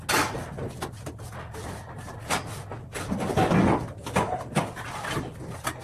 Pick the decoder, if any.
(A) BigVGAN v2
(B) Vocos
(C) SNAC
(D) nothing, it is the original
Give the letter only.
D